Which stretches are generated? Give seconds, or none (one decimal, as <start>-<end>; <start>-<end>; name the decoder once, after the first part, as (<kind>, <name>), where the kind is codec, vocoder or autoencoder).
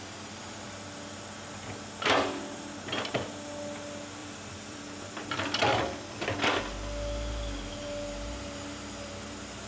4.2-4.8 (vocoder, BigVGAN v2)